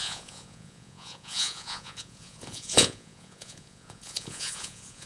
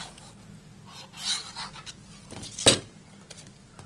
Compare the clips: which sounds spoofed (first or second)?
first